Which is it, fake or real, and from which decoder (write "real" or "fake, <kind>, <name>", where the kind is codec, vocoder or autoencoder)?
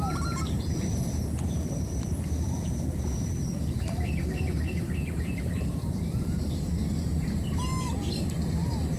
fake, vocoder, BigVGAN v2